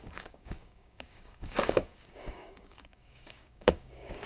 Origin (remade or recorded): remade